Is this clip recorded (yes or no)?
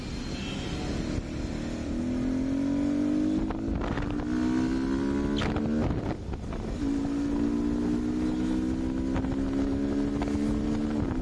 yes